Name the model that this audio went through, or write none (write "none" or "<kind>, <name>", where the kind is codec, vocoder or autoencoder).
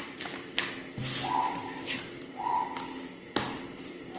none